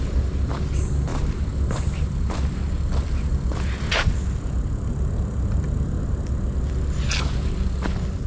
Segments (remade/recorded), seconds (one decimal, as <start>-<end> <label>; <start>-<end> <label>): 0.0-8.3 recorded